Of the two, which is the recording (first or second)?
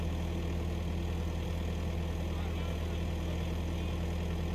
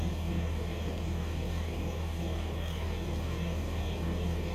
first